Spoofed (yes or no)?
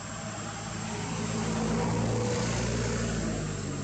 no